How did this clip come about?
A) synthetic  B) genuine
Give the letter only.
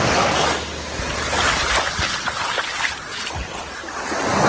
B